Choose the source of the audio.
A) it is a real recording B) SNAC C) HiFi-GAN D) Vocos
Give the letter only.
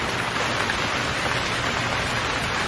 A